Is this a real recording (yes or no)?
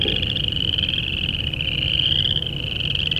yes